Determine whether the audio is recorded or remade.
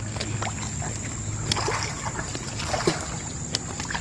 recorded